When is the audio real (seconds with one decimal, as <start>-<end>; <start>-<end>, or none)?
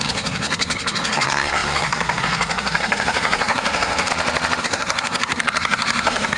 4.1-4.6